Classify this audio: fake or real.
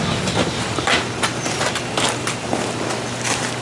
real